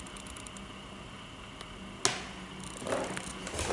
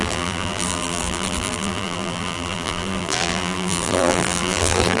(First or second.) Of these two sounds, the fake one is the second